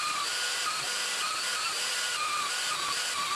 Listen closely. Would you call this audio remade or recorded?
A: recorded